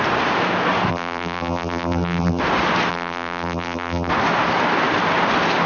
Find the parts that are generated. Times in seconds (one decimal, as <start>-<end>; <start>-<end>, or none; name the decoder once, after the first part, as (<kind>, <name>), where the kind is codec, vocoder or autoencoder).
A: 0.9-2.4 (vocoder, BigVGAN v2); 2.9-4.1